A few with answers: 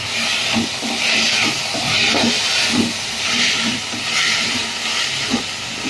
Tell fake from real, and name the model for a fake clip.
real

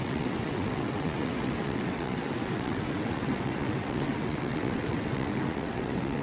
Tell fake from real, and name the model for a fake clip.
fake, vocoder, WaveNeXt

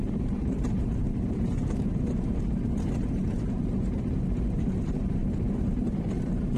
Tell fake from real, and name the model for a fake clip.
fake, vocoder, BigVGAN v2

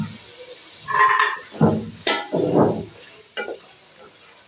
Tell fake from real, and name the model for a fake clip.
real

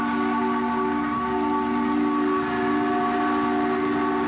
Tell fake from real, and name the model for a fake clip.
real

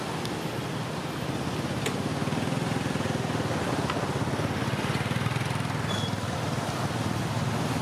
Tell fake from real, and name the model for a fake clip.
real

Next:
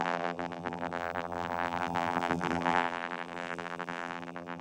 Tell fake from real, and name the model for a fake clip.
fake, vocoder, BigVGAN v2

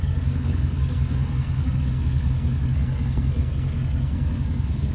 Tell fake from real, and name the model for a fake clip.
fake, codec, SNAC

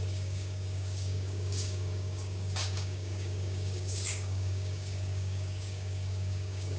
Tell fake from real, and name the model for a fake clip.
fake, codec, DAC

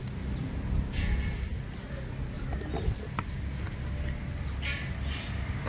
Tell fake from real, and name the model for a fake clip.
real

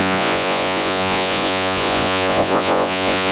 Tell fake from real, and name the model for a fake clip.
fake, vocoder, Vocos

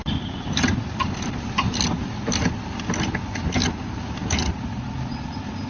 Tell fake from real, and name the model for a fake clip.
real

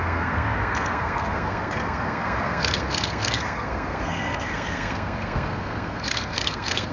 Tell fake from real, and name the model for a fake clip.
fake, codec, SNAC